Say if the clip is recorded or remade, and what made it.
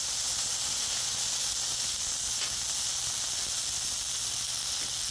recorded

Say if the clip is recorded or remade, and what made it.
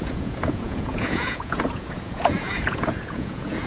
remade, vocoder, Vocos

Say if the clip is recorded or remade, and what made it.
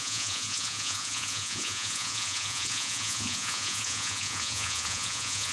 remade, vocoder, Vocos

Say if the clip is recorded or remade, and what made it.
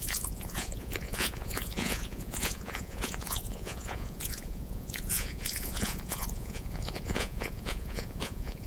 remade, vocoder, Vocos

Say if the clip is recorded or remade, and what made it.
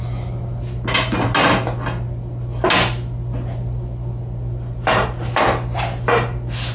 recorded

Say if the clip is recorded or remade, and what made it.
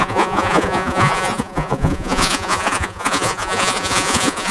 remade, vocoder, Vocos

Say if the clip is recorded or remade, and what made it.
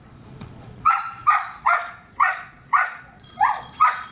remade, vocoder, Vocos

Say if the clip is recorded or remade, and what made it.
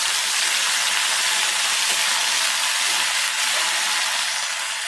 recorded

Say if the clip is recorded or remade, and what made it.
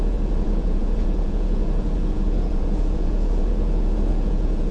remade, vocoder, Vocos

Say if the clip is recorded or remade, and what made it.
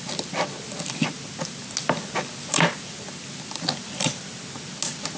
recorded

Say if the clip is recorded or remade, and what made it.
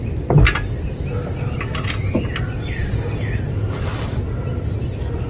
recorded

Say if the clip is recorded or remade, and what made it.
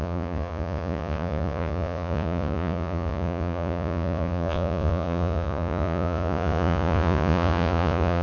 remade, vocoder, Vocos